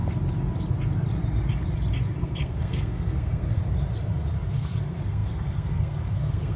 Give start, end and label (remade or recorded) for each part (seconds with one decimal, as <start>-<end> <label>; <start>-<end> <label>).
0.0-2.2 recorded; 2.2-3.6 remade; 3.6-4.5 recorded; 4.5-6.6 remade